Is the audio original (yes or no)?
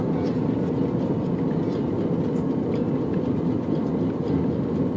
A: yes